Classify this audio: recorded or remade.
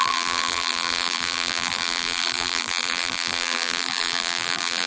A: remade